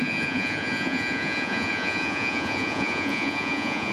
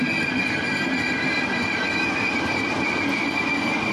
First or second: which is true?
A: second